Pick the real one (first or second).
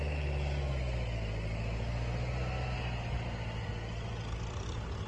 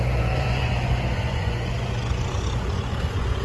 first